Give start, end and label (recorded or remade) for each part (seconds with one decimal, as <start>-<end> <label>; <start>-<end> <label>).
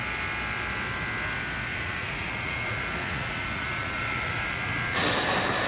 0.0-1.7 recorded; 1.7-5.1 remade; 5.1-5.7 recorded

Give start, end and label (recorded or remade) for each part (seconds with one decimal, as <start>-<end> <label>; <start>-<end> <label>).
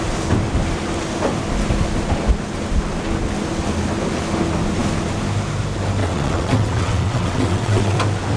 0.0-6.0 recorded; 6.0-8.0 remade; 8.0-8.4 recorded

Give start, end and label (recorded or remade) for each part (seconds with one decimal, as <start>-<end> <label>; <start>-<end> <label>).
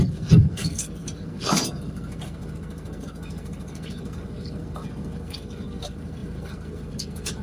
0.0-7.4 remade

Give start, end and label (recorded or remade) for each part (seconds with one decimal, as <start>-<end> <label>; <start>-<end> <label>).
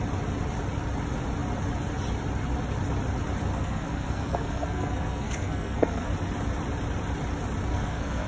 0.0-3.5 recorded; 3.5-6.1 remade; 6.1-7.7 recorded; 7.7-8.3 remade